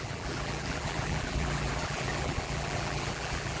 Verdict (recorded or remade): remade